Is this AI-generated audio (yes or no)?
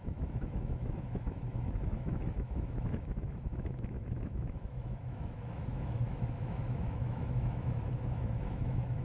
yes